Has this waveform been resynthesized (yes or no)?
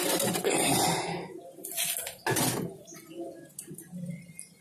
no